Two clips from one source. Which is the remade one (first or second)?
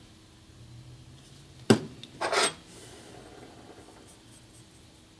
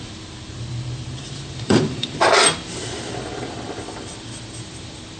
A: second